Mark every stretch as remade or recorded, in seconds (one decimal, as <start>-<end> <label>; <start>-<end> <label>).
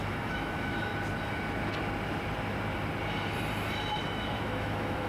0.0-0.9 remade; 0.9-4.0 recorded; 4.0-5.1 remade